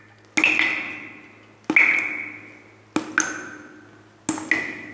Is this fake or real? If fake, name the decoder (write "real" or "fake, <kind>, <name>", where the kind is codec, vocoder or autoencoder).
real